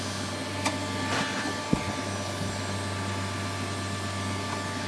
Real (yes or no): yes